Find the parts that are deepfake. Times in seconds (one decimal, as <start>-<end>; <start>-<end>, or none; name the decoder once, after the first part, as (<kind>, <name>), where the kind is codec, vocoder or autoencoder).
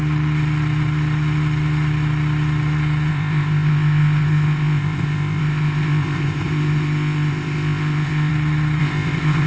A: 3.1-8.3 (codec, ZipCodec); 8.8-9.5